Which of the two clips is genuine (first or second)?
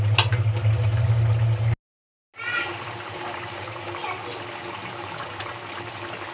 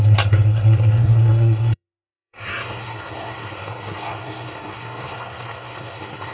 first